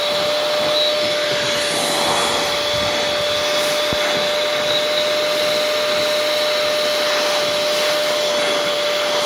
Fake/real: real